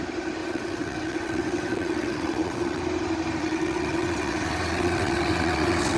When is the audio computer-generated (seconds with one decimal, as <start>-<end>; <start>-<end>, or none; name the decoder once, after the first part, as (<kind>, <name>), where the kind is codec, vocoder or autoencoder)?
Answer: 0.4-2.8 (vocoder, WaveNeXt); 3.4-6.0